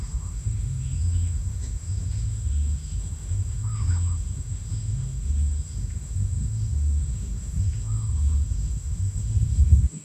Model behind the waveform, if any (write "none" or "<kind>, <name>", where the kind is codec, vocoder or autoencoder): autoencoder, DAC-VAE